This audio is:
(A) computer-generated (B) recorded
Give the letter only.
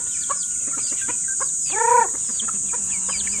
B